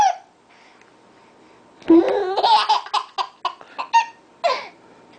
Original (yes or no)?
yes